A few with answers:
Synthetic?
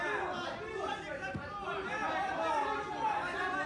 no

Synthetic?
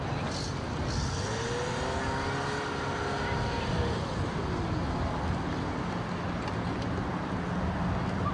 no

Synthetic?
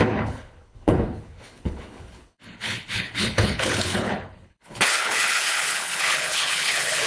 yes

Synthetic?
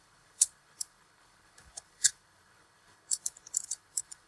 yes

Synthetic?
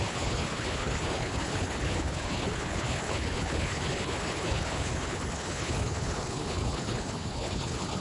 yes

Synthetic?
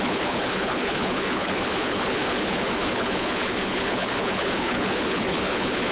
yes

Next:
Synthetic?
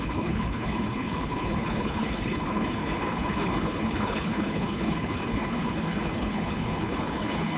yes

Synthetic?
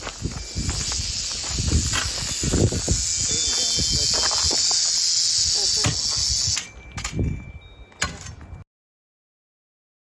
no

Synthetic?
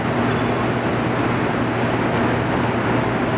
no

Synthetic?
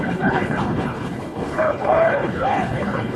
yes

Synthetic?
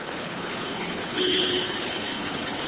yes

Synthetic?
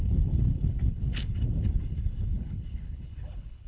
yes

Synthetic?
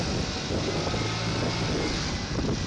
no